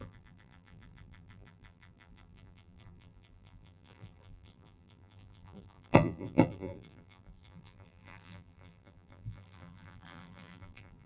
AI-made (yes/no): yes